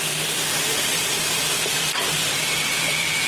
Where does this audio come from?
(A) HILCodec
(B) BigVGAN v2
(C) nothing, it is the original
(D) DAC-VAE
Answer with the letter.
C